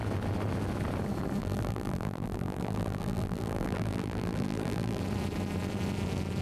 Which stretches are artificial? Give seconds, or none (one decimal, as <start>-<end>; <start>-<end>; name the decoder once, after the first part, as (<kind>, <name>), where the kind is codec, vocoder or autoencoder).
1.4-5.0 (vocoder, BigVGAN v2)